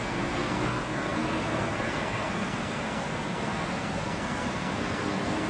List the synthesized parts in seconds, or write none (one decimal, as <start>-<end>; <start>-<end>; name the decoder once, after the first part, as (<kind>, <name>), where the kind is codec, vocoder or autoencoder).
0.0-5.5 (codec, SNAC)

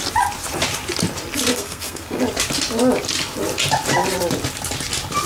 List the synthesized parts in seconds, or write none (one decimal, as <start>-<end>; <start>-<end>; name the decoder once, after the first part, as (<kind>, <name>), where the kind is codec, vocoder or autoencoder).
1.5-2.2 (codec, SNAC)

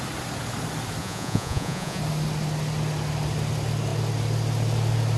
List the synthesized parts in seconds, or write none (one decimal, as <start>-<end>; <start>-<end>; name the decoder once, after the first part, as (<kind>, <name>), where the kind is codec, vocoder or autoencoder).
1.0-2.0 (vocoder, Vocos)

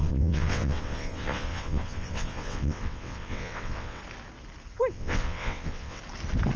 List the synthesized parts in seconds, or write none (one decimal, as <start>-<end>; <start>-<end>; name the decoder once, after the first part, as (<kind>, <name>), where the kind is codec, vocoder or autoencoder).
0.0-4.0 (vocoder, WaveNeXt); 4.9-6.0